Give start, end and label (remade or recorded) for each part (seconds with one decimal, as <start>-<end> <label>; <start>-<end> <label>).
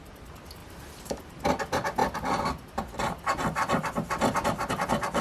0.0-0.6 recorded; 0.6-1.6 remade; 1.6-2.0 recorded; 2.0-4.7 remade; 4.7-5.2 recorded